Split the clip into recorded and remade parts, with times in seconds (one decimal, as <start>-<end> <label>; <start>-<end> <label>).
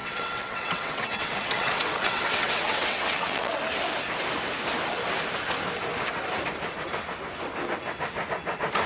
0.0-3.6 remade; 3.6-8.9 recorded